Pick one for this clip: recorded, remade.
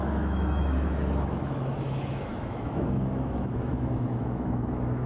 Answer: remade